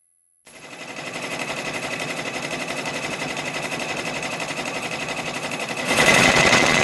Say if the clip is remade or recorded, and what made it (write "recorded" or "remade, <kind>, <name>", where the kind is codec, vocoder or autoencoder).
remade, vocoder, Vocos